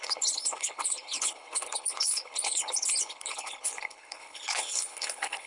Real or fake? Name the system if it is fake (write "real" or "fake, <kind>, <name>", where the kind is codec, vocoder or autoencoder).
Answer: fake, codec, HILCodec